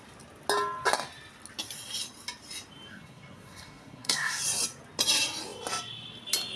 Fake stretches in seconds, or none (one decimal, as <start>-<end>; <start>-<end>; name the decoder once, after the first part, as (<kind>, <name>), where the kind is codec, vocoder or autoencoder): 2.9-4.4 (codec, SNAC)